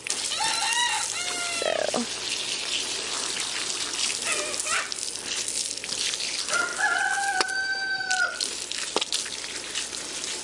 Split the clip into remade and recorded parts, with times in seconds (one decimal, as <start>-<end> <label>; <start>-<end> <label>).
0.0-10.4 recorded